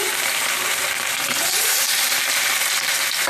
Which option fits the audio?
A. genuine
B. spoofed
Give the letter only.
B